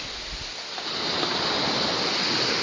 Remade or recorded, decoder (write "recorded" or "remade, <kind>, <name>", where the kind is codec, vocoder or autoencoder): recorded